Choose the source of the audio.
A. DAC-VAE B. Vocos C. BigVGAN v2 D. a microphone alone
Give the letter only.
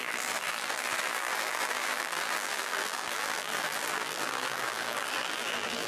C